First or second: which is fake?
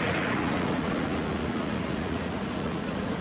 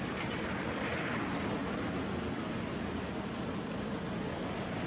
first